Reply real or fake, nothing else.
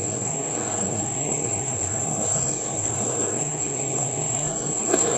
fake